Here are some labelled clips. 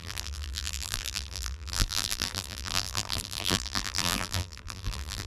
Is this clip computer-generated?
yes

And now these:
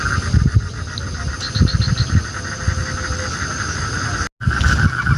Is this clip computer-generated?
no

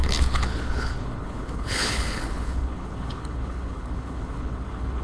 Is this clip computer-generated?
yes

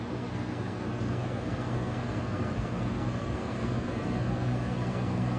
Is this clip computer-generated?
yes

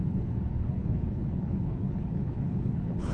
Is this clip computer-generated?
yes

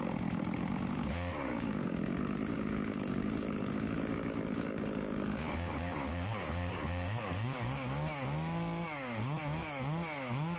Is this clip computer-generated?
yes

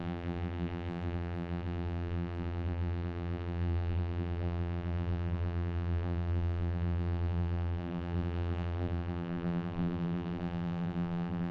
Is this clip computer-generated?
yes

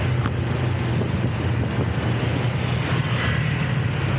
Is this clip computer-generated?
no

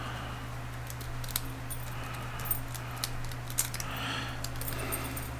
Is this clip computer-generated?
no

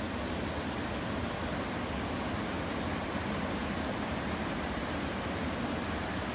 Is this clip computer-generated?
no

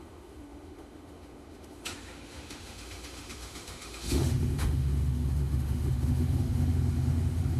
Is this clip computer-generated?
yes